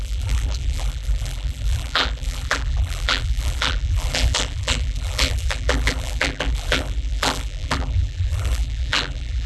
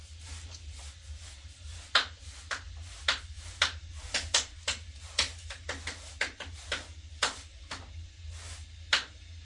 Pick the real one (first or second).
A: second